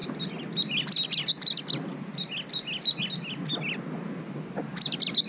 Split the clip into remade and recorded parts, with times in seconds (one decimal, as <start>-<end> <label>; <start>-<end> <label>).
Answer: 0.0-5.3 recorded